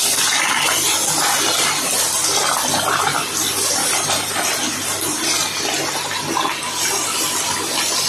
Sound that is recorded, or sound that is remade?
recorded